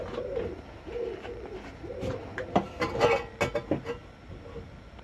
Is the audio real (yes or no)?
yes